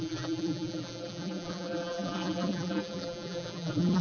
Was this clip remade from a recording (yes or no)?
yes